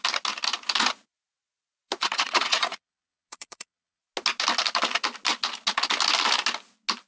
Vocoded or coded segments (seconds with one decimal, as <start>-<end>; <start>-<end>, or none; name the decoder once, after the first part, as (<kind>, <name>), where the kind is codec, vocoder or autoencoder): 2.0-4.0 (vocoder, Vocos)